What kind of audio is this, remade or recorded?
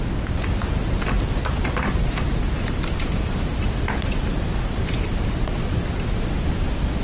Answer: recorded